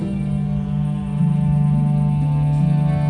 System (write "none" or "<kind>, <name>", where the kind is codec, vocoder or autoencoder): none